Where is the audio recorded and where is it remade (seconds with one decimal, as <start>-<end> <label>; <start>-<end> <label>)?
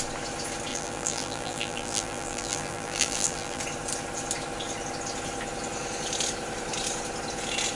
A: 0.0-0.7 recorded; 0.7-3.6 remade; 3.6-7.8 recorded